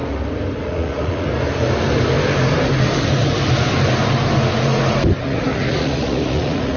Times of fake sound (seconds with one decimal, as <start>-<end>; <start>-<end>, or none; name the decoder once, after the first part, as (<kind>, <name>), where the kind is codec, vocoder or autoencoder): 0.6-1.3 (vocoder, Vocos); 5.2-6.8